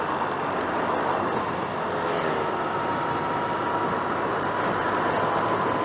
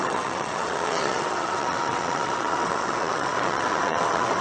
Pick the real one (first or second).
first